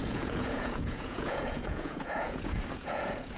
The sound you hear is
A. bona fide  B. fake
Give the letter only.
B